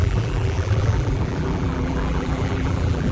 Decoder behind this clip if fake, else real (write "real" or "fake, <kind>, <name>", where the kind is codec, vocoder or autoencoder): fake, vocoder, BigVGAN v2